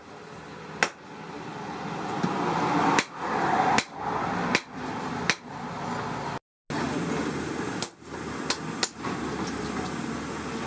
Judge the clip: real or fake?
real